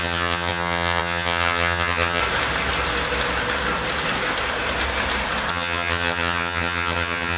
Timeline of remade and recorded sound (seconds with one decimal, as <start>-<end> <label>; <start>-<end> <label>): 0.0-2.2 remade; 2.2-5.5 recorded; 5.5-7.4 remade